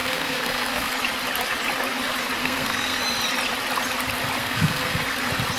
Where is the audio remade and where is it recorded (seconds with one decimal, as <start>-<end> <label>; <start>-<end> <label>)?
0.0-0.9 remade; 0.9-2.4 recorded; 2.4-3.0 remade; 3.0-4.4 recorded; 4.4-5.0 remade; 5.0-5.6 recorded